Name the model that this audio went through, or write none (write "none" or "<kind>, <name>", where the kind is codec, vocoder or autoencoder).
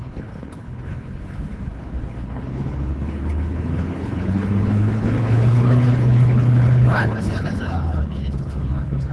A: codec, HILCodec